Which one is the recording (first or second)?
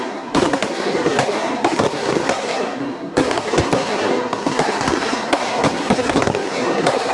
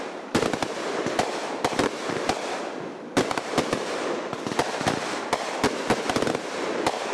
second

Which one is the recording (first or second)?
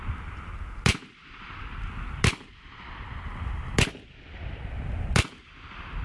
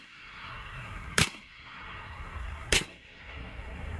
first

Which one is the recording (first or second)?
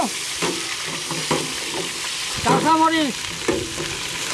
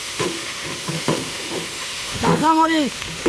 first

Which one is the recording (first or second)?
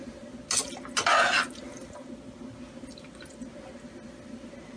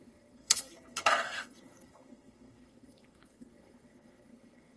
first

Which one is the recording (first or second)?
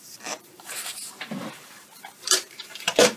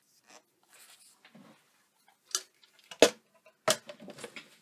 second